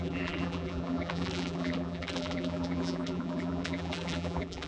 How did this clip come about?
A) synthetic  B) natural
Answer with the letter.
A